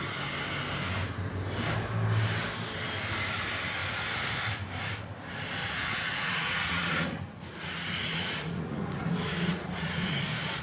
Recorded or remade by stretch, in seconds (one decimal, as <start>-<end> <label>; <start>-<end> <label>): 0.0-3.8 recorded; 3.8-4.5 remade; 4.5-5.6 recorded; 5.6-10.2 remade; 10.2-10.6 recorded